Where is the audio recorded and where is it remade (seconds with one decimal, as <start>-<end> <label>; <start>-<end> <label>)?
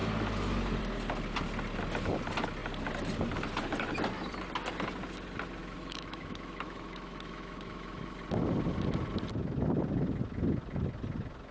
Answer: 0.0-5.6 recorded; 5.6-8.1 remade; 8.1-11.5 recorded